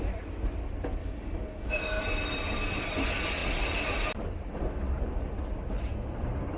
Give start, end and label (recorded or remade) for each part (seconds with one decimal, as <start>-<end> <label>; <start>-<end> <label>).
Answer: 0.0-1.0 recorded; 1.0-2.0 remade; 2.0-6.6 recorded